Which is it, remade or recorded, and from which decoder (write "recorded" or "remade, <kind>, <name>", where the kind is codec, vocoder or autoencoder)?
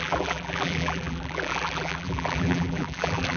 remade, vocoder, BigVGAN v2